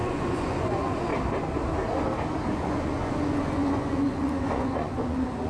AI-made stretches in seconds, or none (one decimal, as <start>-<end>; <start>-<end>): 0.0-1.1; 2.5-5.5